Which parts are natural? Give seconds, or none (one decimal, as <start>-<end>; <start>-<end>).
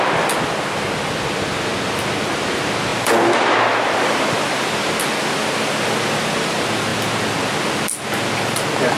0.0-9.0